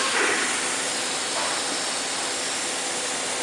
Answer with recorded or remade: recorded